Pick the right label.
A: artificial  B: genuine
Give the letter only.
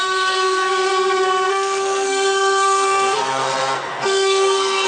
A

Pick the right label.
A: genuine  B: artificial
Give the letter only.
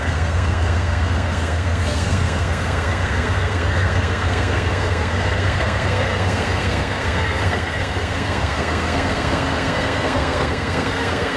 B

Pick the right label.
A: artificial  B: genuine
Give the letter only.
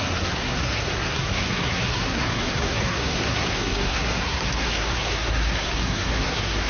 A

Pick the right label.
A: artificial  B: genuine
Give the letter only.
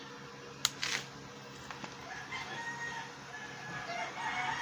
B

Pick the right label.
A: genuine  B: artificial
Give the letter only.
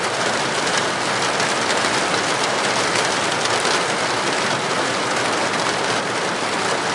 A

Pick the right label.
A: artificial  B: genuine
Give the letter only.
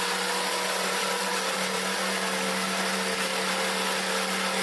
B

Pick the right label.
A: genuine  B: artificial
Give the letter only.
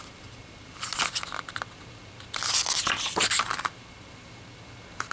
A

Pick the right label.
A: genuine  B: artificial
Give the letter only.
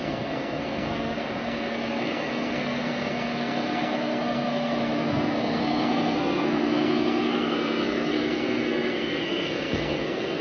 B